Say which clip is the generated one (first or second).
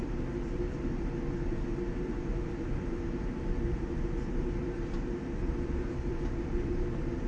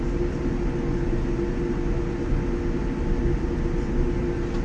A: first